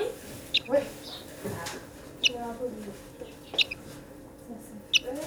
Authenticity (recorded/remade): recorded